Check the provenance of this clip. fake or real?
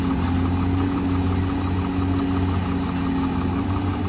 real